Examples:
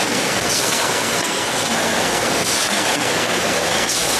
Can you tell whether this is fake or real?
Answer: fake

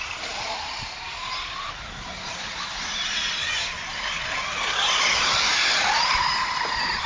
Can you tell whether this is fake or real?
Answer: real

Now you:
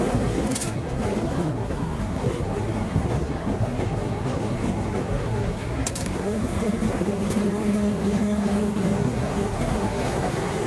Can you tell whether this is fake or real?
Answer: fake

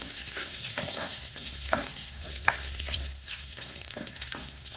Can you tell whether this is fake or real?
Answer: fake